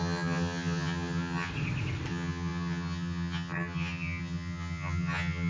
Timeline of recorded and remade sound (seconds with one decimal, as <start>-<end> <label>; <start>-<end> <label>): 0.0-1.5 remade; 1.5-2.1 recorded; 2.1-5.5 remade

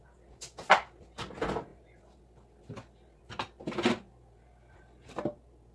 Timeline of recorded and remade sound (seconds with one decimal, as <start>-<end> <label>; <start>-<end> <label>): 0.0-5.7 recorded

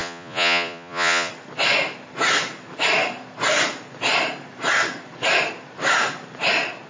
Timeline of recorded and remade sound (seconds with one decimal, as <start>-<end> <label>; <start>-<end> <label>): 0.0-1.3 remade; 1.3-6.9 recorded

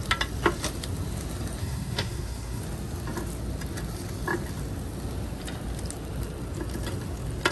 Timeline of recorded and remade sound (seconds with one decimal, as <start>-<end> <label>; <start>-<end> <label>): 0.0-1.6 recorded; 1.6-2.6 remade; 2.6-7.5 recorded

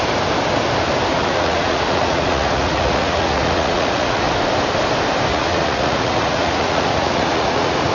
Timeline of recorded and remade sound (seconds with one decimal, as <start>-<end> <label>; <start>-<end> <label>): 0.0-1.1 recorded; 1.1-4.2 remade; 4.2-5.3 recorded; 5.3-7.9 remade